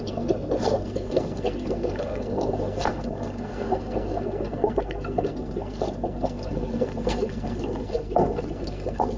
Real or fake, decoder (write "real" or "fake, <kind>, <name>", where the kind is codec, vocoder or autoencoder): fake, codec, SNAC